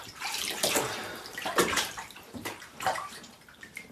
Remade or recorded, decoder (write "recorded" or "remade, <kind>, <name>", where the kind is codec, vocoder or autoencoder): remade, vocoder, BigVGAN v2